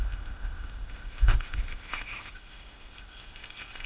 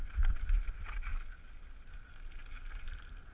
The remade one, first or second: first